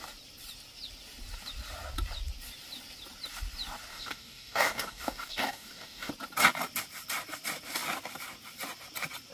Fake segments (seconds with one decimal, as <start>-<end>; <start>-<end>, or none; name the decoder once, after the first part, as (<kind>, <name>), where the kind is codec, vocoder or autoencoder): 3.9-6.1 (codec, DAC)